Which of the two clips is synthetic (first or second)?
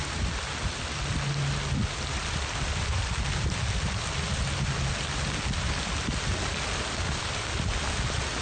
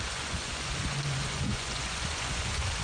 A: second